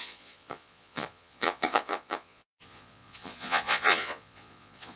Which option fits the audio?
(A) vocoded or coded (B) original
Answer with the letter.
A